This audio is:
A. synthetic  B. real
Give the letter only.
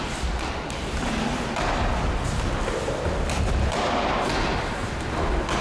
B